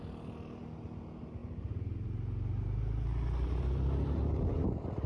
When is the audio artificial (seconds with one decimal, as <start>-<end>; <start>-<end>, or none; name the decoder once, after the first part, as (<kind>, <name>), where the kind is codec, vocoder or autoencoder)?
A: none